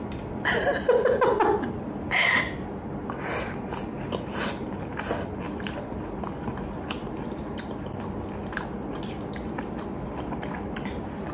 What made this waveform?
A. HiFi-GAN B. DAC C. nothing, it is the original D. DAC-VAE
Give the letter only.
C